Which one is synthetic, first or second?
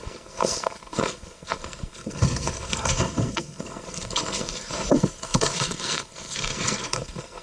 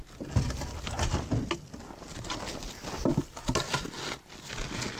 first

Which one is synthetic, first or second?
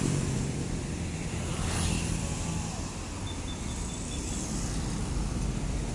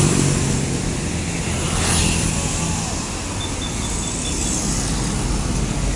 first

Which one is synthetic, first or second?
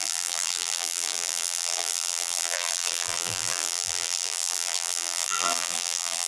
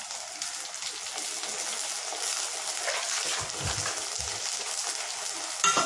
first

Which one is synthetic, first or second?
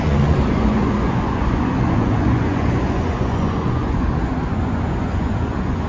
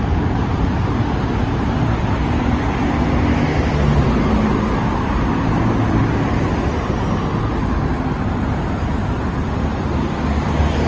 first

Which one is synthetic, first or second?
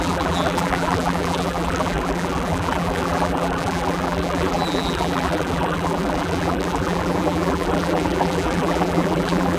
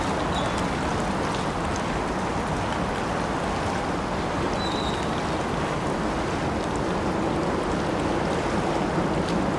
first